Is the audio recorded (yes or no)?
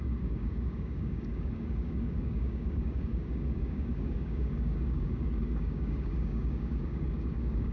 no